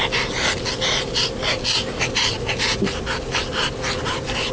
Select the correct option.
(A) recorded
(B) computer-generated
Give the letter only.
A